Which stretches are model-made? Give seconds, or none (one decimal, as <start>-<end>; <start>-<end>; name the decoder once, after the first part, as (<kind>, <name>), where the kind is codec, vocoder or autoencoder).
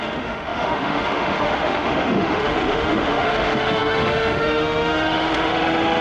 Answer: 0.0-6.0 (autoencoder, DAC-VAE)